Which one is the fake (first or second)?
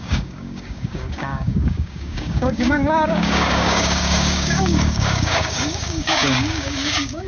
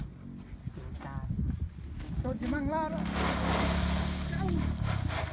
first